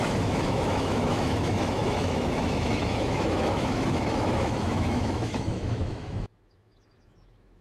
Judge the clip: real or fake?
fake